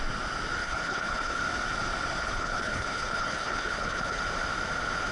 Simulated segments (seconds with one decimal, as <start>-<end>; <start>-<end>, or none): 0.6-1.4; 2.2-4.2

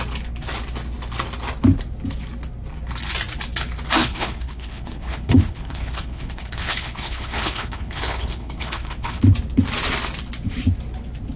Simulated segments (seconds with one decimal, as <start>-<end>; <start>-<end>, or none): 4.0-9.2

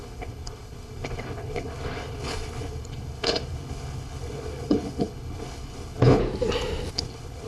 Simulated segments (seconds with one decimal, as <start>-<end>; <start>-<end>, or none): 0.0-6.2; 6.9-7.5

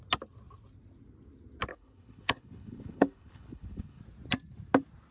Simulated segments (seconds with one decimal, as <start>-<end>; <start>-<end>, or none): 1.7-4.0

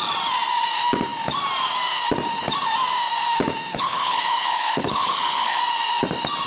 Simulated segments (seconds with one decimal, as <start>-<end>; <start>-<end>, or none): 3.7-5.6

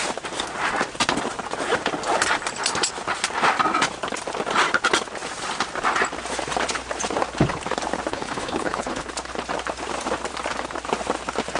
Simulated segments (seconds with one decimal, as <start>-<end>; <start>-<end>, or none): 8.1-9.1

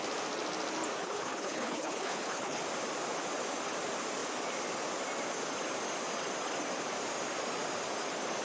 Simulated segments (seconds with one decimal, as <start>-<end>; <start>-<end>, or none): 1.0-2.6

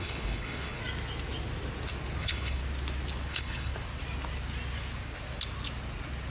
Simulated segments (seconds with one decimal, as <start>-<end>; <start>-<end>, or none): 0.0-0.8; 2.2-2.6; 3.3-3.7